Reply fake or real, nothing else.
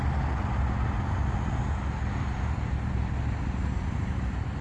real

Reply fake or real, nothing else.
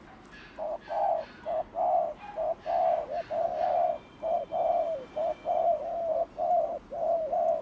real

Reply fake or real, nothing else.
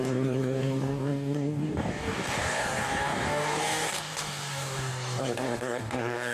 fake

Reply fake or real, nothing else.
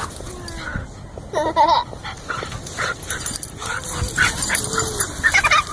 real